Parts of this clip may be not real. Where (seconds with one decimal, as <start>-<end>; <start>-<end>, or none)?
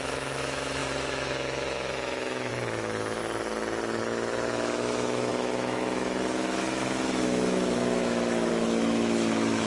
0.0-3.2; 4.0-9.7